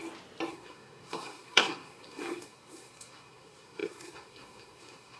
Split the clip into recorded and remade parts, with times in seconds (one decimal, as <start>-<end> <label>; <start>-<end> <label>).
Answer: 0.0-0.5 recorded; 0.5-5.2 remade

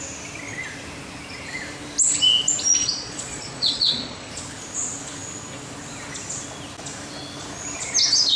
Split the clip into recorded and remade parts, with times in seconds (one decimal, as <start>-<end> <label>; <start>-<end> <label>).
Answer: 0.0-2.8 recorded; 2.8-4.3 remade; 4.3-8.4 recorded

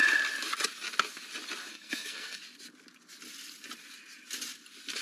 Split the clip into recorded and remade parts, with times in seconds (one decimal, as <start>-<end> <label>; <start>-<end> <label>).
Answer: 0.0-1.7 recorded; 1.7-2.4 remade; 2.4-5.0 recorded

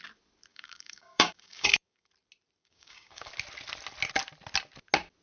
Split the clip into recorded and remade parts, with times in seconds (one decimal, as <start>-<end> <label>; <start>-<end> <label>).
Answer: 0.0-0.5 recorded; 0.5-2.1 remade; 2.1-2.6 recorded; 2.6-3.3 remade; 3.3-5.2 recorded

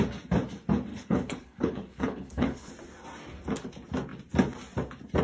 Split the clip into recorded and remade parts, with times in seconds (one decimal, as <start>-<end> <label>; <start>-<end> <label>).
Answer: 0.0-0.9 recorded; 0.9-2.7 remade; 2.7-5.2 recorded

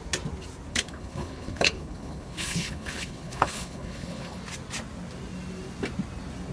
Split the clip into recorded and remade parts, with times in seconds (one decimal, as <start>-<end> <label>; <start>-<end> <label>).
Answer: 0.0-0.7 recorded; 0.7-4.4 remade; 4.4-6.5 recorded